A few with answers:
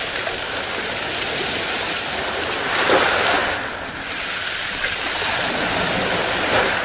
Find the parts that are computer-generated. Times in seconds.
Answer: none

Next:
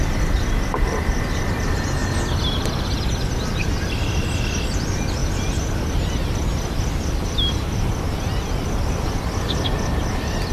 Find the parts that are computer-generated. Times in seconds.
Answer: none